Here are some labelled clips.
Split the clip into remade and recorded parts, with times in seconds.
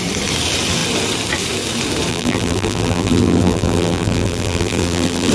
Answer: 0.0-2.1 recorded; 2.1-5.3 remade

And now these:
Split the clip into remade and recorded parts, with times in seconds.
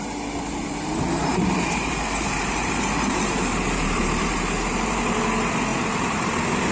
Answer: 0.0-1.3 recorded; 1.3-5.3 remade; 5.3-5.7 recorded; 5.7-6.3 remade; 6.3-6.7 recorded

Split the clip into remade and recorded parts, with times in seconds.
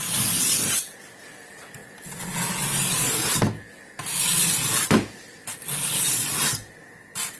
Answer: 0.0-7.4 recorded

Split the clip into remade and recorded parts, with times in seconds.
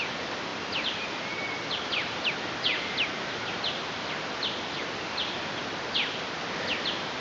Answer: 0.0-7.2 recorded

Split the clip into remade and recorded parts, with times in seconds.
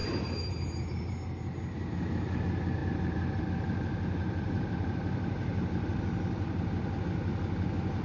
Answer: 0.0-1.1 remade; 1.1-2.8 recorded; 2.8-3.4 remade; 3.4-4.2 recorded; 4.2-5.9 remade; 5.9-8.0 recorded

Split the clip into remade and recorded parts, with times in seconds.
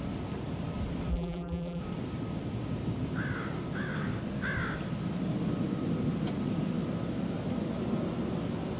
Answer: 0.0-1.1 recorded; 1.1-1.8 remade; 1.8-8.8 recorded